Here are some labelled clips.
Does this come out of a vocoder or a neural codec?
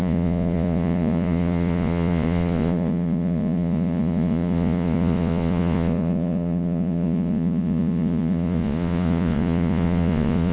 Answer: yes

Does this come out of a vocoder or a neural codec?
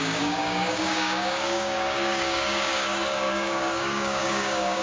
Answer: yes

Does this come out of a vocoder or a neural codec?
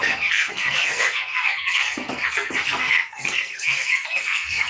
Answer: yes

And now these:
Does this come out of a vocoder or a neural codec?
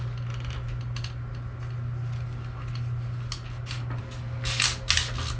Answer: no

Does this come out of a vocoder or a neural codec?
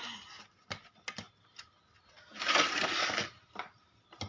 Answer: no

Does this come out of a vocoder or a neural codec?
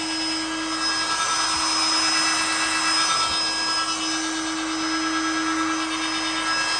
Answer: no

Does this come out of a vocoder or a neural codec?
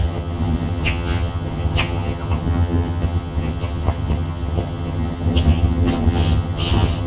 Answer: yes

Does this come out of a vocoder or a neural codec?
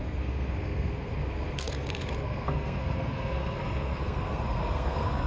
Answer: yes